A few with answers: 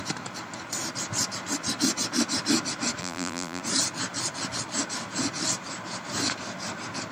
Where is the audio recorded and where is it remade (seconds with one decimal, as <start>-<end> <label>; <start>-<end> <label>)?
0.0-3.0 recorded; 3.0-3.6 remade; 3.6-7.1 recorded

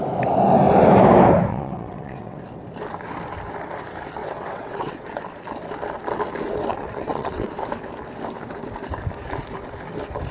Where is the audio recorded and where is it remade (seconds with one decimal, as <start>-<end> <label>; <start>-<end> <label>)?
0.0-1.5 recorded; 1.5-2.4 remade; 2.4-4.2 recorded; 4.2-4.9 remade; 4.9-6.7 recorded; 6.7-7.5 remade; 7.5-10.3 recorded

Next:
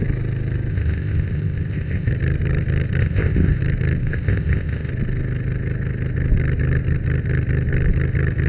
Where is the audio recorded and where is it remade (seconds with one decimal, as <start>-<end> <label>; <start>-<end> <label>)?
0.0-0.7 recorded; 0.7-2.1 remade; 2.1-3.0 recorded; 3.0-3.6 remade; 3.6-4.0 recorded; 4.0-4.9 remade; 4.9-8.5 recorded

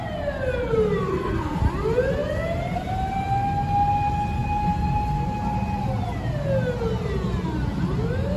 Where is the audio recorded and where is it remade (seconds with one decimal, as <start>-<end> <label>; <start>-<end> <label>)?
0.0-1.1 recorded; 1.1-1.6 remade; 1.6-8.4 recorded